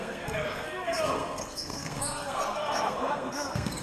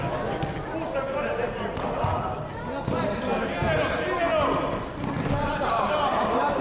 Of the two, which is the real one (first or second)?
second